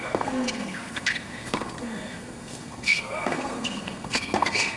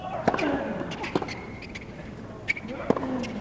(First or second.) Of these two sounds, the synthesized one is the first